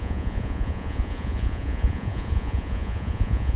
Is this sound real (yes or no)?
no